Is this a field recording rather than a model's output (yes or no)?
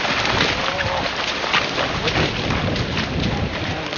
yes